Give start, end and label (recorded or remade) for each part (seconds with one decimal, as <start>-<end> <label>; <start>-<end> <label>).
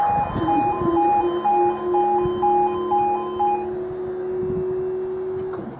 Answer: 0.0-5.8 recorded